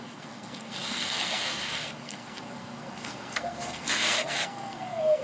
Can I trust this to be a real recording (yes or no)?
no